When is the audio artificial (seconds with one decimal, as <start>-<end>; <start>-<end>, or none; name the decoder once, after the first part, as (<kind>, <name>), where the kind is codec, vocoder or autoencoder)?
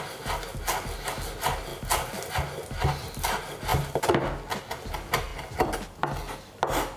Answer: none